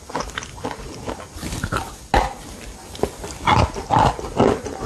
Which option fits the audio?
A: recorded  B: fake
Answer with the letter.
A